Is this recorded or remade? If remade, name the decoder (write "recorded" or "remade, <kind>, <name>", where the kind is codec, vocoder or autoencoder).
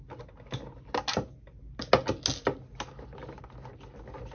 recorded